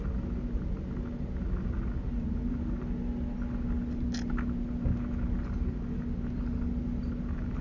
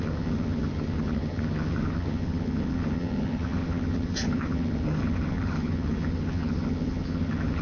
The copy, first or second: second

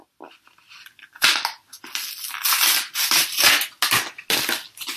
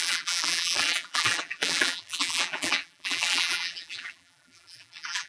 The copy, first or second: second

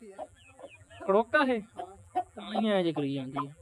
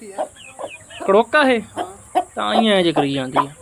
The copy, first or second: first